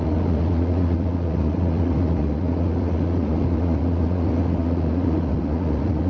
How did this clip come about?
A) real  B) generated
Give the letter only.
B